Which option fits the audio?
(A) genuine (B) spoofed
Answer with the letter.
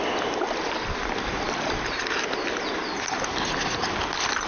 A